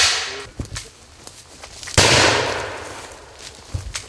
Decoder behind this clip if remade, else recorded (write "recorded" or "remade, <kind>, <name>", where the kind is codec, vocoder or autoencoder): recorded